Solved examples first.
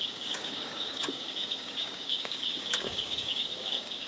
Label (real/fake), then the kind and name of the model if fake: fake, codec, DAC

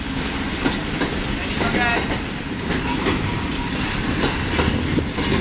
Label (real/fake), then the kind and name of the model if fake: real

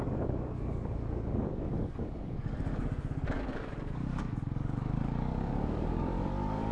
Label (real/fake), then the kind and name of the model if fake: fake, codec, DAC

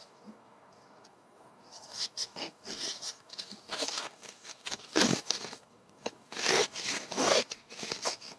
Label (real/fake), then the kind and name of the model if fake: fake, codec, DAC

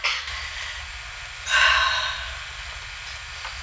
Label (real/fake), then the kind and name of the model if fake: real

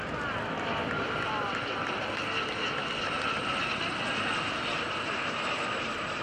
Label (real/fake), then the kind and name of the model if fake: real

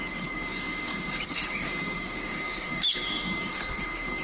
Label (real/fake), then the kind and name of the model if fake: fake, codec, DAC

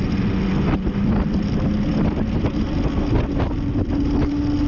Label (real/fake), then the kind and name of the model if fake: real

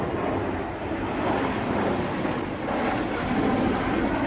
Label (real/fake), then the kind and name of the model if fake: real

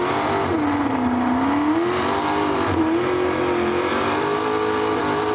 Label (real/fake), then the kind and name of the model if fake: real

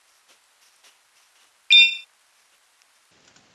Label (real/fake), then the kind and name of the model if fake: real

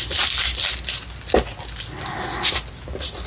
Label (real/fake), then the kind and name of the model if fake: real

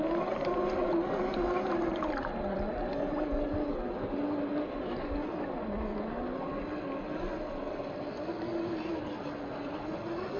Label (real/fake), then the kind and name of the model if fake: real